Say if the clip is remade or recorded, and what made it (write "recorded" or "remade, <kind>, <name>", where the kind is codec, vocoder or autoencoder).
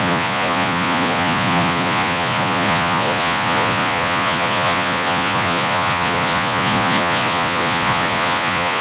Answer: remade, vocoder, Vocos